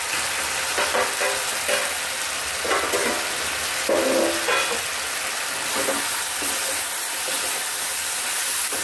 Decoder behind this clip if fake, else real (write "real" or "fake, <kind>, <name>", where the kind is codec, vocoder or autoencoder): real